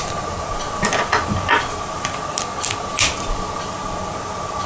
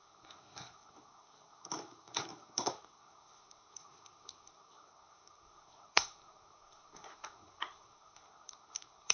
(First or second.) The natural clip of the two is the first